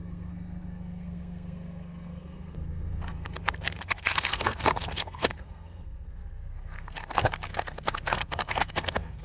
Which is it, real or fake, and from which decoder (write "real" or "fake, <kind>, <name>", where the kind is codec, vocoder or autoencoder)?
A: fake, codec, SNAC